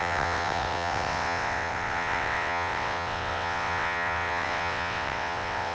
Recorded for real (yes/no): no